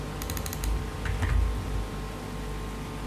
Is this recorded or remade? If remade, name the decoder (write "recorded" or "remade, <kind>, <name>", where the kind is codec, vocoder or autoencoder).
recorded